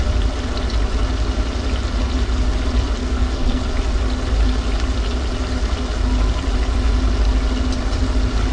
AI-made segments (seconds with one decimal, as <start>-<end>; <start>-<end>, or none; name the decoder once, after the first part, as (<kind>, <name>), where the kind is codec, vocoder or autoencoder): 3.0-3.6 (codec, SNAC)